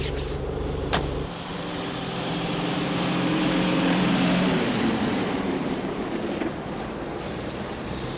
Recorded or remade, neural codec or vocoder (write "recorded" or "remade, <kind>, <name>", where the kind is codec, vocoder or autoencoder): remade, vocoder, BigVGAN v2